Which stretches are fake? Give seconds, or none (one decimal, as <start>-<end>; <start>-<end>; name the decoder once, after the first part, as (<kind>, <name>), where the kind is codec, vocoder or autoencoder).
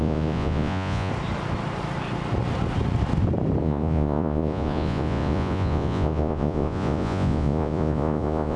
0.0-1.1 (vocoder, Vocos); 3.6-8.6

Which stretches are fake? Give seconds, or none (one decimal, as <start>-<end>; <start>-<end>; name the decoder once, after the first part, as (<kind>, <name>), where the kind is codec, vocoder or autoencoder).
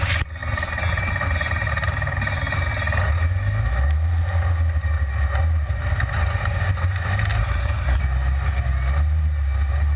7.4-8.0 (codec, SNAC)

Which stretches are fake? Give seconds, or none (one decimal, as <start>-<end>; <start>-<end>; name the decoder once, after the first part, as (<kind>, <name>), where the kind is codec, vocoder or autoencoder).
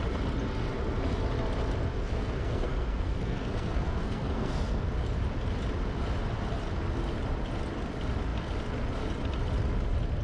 2.0-4.9 (codec, SNAC)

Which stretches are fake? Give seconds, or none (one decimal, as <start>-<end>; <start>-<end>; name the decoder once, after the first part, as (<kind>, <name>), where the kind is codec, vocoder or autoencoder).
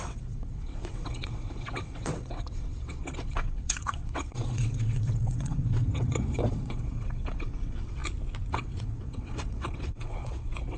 0.0-8.0 (vocoder, WaveNeXt); 8.5-10.8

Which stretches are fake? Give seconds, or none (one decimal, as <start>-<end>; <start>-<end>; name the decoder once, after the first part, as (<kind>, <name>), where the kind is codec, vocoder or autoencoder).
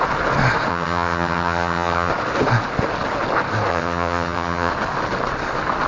0.7-2.1 (vocoder, HiFi-GAN); 3.7-4.7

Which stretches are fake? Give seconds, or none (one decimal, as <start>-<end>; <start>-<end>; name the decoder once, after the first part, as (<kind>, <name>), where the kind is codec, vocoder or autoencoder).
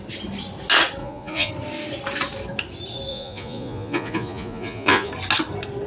1.0-1.5 (vocoder, Vocos); 3.1-5.1